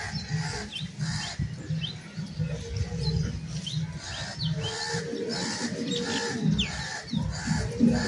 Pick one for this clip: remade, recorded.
recorded